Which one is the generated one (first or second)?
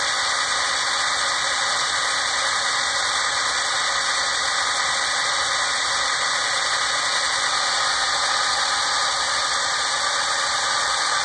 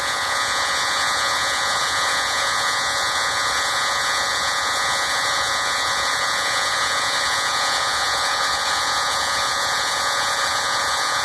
second